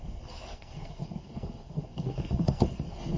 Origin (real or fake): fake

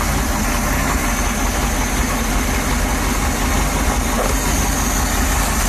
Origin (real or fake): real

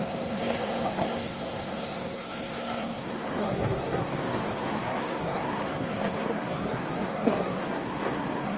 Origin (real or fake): fake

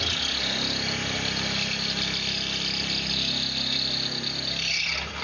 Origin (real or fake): real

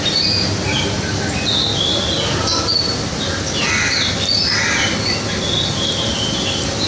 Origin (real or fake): real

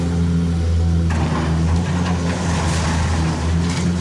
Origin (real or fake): real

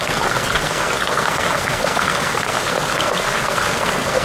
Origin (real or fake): fake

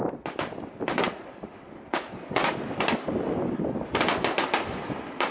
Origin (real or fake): real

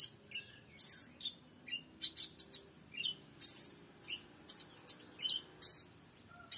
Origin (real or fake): real